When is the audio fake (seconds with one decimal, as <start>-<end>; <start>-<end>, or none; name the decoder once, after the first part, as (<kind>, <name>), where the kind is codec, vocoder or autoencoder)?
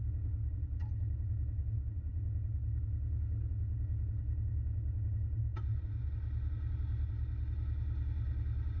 none